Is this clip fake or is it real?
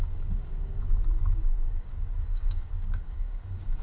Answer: fake